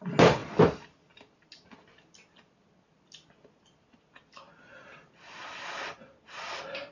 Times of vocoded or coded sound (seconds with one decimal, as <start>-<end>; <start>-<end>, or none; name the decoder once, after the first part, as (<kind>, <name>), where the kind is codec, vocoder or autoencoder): none